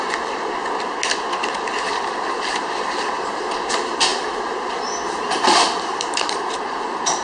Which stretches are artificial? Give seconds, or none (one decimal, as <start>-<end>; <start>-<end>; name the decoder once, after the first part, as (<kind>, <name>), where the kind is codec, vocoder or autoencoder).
0.0-0.6 (vocoder, BigVGAN v2); 2.2-7.2